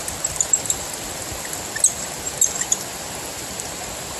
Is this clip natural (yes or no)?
yes